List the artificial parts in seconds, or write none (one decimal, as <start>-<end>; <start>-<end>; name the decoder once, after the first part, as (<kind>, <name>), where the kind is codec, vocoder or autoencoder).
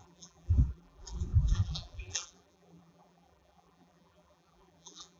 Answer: 0.0-5.2 (vocoder, BigVGAN v2)